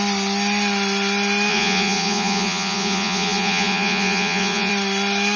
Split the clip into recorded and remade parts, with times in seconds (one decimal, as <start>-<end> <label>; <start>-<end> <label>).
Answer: 0.0-1.5 recorded; 1.5-4.7 remade; 4.7-5.4 recorded